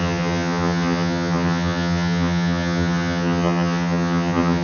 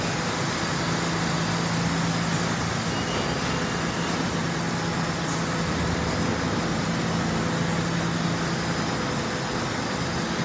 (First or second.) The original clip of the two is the second